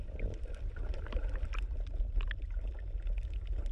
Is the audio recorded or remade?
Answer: recorded